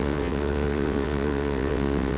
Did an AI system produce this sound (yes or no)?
yes